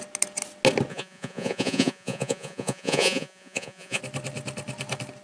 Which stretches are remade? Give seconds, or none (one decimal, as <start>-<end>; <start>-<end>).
0.9-4.0